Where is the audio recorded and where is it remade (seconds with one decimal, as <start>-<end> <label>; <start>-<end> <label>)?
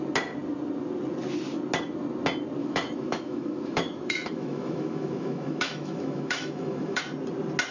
0.0-2.6 recorded; 2.6-7.0 remade; 7.0-7.7 recorded